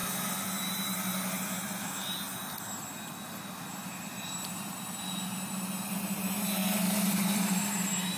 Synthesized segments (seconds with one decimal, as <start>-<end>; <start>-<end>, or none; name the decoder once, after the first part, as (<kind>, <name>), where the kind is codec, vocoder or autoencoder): 0.7-1.1 (vocoder, BigVGAN v2); 3.7-8.2